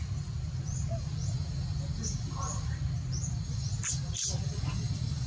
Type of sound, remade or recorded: recorded